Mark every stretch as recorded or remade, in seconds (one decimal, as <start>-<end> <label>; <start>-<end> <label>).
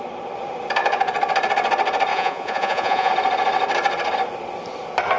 0.0-2.1 recorded; 2.1-3.1 remade; 3.1-5.2 recorded